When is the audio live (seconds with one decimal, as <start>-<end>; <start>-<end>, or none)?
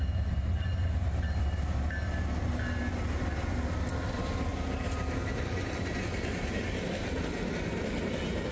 0.0-8.5